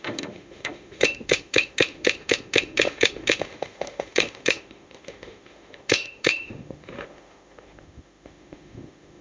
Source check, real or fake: fake